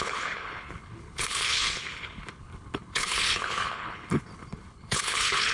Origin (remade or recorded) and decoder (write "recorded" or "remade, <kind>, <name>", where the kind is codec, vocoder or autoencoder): remade, codec, HILCodec